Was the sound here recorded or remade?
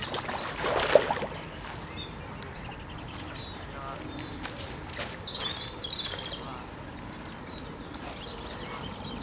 recorded